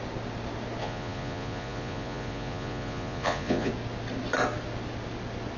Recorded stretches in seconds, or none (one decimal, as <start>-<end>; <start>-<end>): 0.0-0.8; 3.7-5.6